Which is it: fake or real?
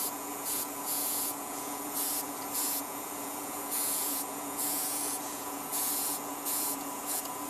fake